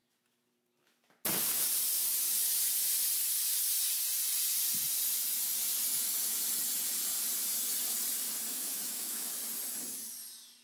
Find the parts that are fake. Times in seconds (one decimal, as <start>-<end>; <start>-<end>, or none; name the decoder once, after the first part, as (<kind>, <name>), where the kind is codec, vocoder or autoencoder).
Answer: 8.5-9.3 (autoencoder, DAC-VAE)